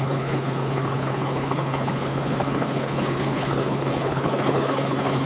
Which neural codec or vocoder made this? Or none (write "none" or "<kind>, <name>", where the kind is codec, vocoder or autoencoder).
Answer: codec, HILCodec